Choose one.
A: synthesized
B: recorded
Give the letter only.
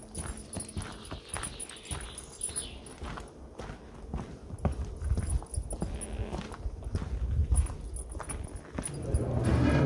B